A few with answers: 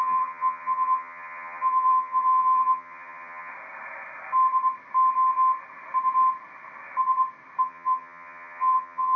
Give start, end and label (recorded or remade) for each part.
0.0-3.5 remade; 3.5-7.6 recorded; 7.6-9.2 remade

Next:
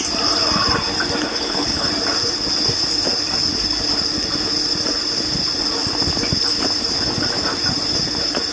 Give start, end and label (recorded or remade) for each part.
0.0-1.3 recorded; 1.3-1.9 remade; 1.9-8.5 recorded

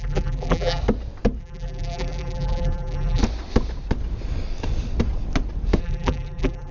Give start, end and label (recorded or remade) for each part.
0.0-0.8 remade; 0.8-1.4 recorded; 1.4-3.2 remade; 3.2-5.8 recorded; 5.8-6.7 remade

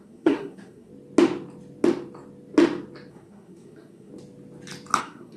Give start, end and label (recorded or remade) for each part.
0.0-0.9 remade; 0.9-3.1 recorded; 3.1-4.1 remade; 4.1-5.0 recorded; 5.0-5.4 remade

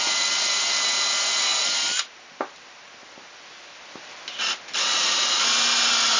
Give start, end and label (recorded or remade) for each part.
0.0-6.2 recorded

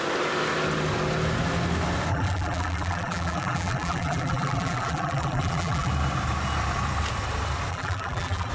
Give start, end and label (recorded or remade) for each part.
0.0-2.1 recorded; 2.1-5.9 remade; 5.9-7.7 recorded; 7.7-8.5 remade

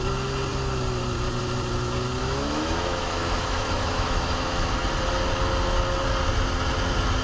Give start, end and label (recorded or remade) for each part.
0.0-2.2 recorded; 2.2-4.7 remade; 4.7-7.2 recorded

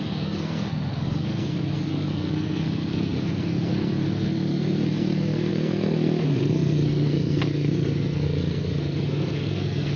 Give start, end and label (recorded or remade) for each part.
0.0-10.0 remade